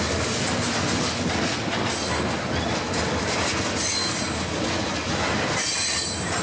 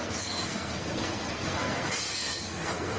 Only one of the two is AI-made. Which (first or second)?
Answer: second